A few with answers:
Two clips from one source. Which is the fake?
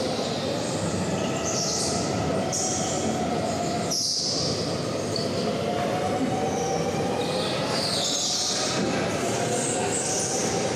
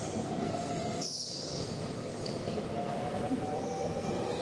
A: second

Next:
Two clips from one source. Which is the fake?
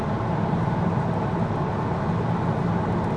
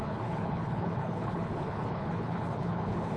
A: second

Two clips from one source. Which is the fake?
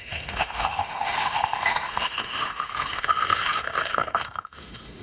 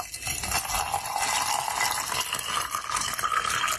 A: first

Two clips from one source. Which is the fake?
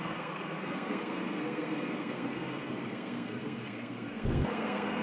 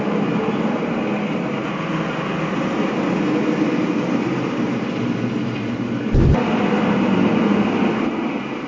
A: first